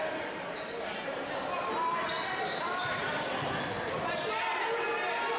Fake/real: real